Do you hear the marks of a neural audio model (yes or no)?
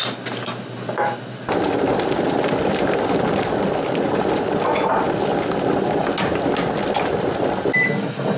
no